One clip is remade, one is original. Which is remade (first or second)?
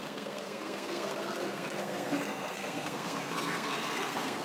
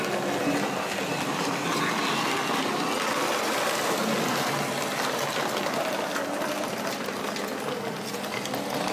first